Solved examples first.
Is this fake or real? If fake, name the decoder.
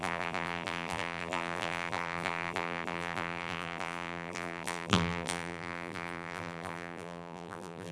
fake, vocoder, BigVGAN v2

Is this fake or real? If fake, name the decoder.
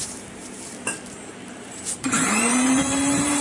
fake, vocoder, BigVGAN v2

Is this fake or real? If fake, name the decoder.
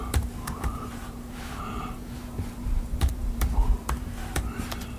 fake, vocoder, BigVGAN v2